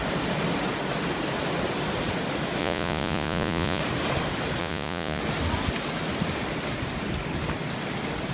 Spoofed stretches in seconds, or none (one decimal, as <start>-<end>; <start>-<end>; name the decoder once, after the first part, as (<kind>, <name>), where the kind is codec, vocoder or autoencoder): 2.6-3.8 (vocoder, Vocos); 4.6-5.2